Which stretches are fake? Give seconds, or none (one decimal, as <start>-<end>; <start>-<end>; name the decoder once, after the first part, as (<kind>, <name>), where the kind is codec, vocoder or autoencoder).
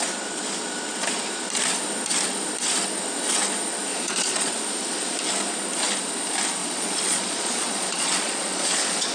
3.9-4.5 (vocoder, Vocos); 6.6-9.1